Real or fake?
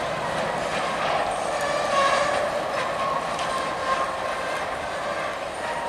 real